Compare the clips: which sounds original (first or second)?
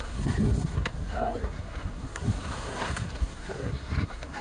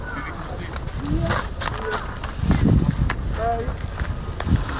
second